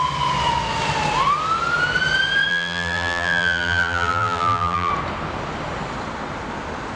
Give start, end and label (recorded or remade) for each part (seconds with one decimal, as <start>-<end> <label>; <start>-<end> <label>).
0.0-2.5 recorded; 2.5-4.9 remade; 4.9-7.0 recorded